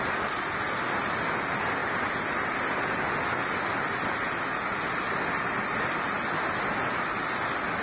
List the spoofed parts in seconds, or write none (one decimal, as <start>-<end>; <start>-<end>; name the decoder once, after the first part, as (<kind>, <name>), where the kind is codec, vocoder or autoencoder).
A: none